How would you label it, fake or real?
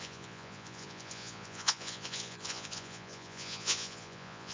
fake